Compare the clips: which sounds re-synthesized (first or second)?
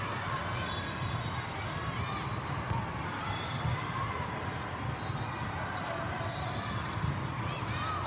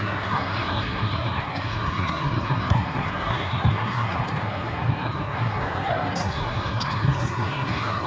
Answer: second